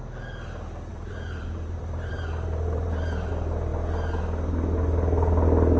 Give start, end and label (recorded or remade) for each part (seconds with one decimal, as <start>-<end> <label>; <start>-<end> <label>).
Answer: 0.0-0.9 recorded; 0.9-3.3 remade; 3.3-5.8 recorded